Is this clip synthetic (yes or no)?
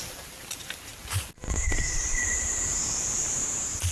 yes